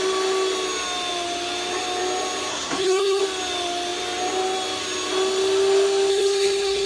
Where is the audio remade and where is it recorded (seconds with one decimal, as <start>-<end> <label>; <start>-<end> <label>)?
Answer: 0.0-2.5 recorded; 2.5-3.2 remade; 3.2-6.1 recorded; 6.1-6.9 remade